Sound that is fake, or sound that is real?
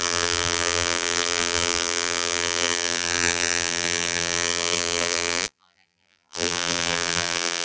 fake